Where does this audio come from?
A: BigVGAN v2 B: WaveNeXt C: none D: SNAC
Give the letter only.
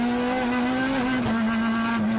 C